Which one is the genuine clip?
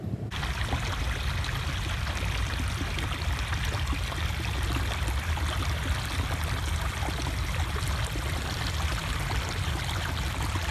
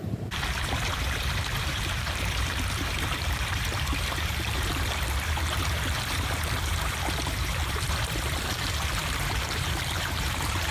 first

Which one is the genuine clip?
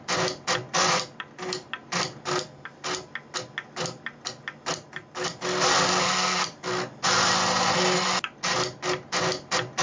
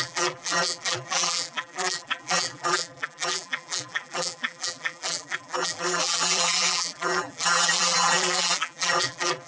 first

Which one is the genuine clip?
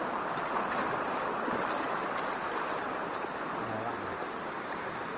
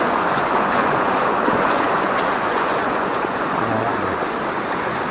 first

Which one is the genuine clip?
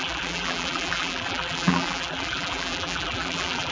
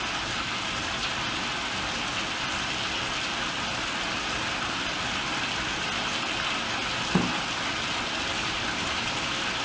second